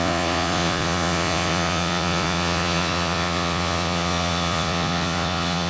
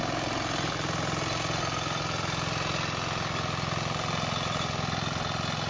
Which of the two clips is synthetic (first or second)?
first